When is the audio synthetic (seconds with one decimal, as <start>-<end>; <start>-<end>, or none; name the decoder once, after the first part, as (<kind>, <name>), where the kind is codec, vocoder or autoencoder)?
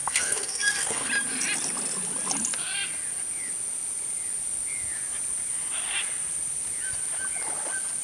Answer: 0.0-1.1 (codec, SNAC)